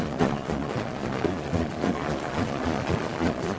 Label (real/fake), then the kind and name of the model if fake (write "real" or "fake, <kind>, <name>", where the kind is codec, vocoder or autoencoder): fake, vocoder, Vocos